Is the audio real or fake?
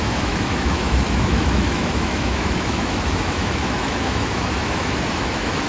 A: fake